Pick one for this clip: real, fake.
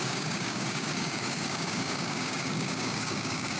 fake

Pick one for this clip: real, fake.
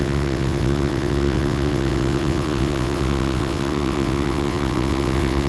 fake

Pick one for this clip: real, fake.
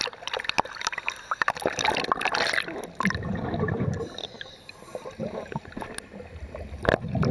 real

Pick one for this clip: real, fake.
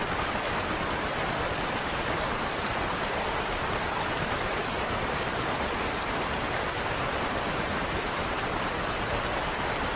real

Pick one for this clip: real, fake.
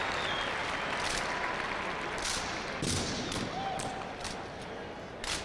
real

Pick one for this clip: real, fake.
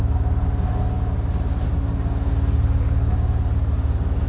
real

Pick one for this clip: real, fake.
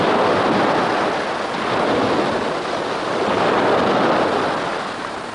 real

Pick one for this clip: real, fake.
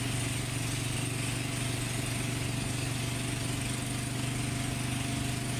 real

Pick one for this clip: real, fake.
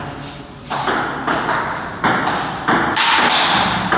real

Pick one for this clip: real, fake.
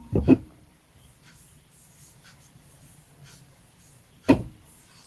fake